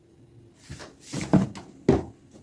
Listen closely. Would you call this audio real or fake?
real